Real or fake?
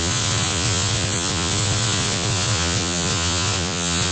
fake